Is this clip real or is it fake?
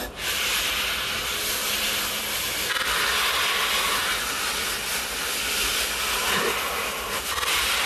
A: real